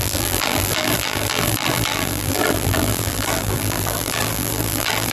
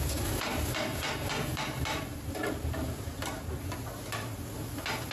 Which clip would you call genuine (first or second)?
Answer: second